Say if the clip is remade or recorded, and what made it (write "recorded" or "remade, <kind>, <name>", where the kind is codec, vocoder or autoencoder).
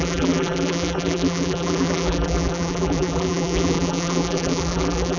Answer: remade, vocoder, BigVGAN v2